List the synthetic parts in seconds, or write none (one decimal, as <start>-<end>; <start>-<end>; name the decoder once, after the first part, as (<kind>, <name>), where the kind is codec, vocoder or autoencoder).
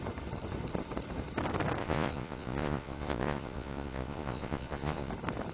1.8-5.1 (vocoder, Vocos)